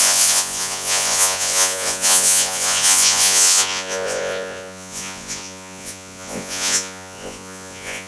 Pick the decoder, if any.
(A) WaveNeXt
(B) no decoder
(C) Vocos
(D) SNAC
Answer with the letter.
C